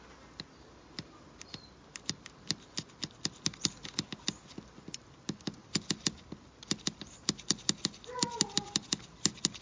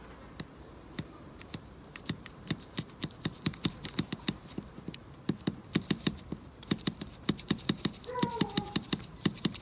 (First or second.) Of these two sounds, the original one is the first